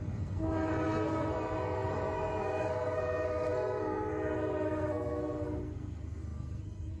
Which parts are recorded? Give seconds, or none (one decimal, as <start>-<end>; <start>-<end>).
none